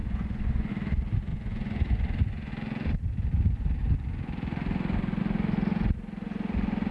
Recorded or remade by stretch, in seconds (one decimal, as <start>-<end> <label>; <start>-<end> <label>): 0.0-0.7 remade; 0.7-1.3 recorded; 1.3-2.5 remade; 2.5-6.9 recorded